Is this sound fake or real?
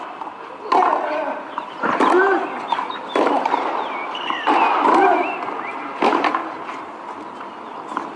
real